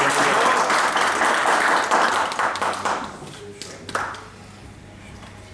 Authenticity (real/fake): real